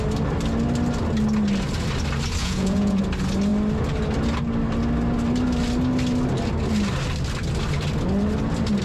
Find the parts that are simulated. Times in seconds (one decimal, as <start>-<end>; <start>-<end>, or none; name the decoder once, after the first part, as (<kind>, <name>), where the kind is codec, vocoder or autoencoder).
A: 2.4-3.0 (vocoder, Vocos)